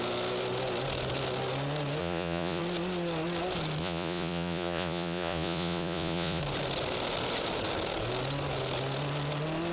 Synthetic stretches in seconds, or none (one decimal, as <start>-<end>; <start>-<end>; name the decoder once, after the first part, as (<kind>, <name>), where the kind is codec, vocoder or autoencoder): 2.0-2.6 (vocoder, Vocos); 3.8-6.4